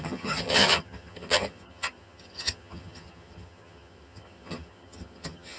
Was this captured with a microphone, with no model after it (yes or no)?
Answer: no